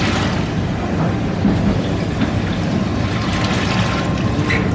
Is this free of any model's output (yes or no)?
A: yes